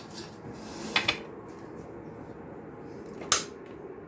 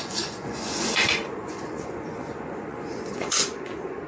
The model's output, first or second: second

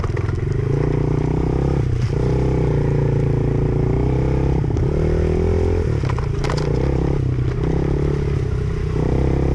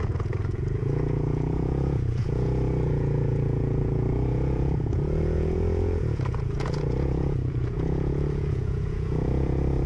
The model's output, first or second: second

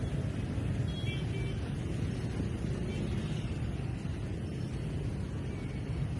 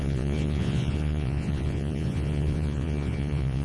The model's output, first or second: second